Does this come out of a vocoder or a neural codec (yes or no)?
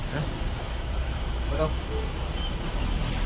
yes